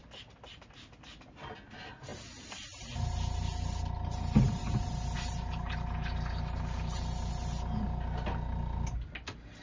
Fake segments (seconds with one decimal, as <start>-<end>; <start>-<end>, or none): 2.1-7.3